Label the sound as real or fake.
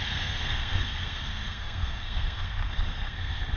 fake